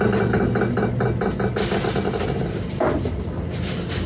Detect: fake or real real